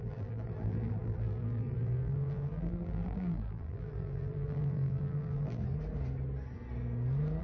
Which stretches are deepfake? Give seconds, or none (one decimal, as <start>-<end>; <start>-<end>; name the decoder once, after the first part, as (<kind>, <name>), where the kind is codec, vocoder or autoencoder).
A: 0.0-5.6 (vocoder, BigVGAN v2)

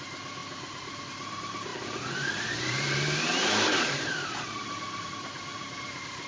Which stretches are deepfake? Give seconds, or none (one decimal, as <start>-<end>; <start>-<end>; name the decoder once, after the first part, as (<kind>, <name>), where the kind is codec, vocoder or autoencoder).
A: 0.4-1.0 (vocoder, BigVGAN v2); 1.7-5.1; 5.5-6.3